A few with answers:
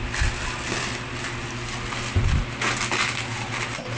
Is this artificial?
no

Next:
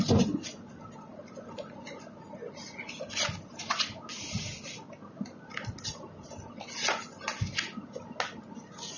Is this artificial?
no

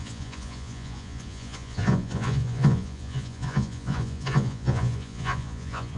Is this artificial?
yes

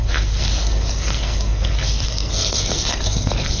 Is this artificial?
yes